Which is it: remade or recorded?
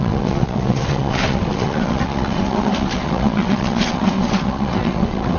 remade